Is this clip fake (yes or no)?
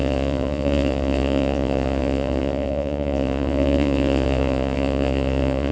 yes